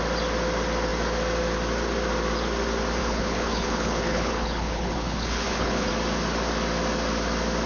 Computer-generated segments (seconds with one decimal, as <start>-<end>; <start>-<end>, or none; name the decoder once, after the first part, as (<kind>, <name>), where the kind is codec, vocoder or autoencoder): 3.0-5.9 (codec, HILCodec)